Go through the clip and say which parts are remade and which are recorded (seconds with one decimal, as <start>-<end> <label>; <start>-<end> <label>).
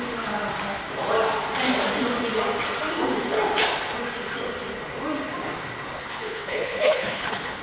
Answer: 0.0-6.0 recorded; 6.0-7.6 remade